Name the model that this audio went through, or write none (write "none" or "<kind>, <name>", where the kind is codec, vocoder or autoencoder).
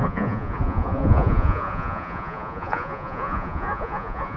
vocoder, Vocos